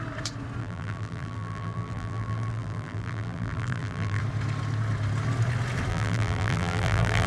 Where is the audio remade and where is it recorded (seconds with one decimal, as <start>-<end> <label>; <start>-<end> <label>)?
0.0-0.6 recorded; 0.6-4.2 remade; 4.2-5.9 recorded; 5.9-7.3 remade